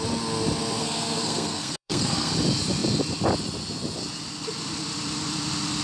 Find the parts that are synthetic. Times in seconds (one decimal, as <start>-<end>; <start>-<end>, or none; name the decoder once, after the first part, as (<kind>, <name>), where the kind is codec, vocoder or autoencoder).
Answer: 0.8-2.3 (codec, SNAC)